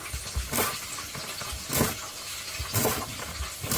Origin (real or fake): real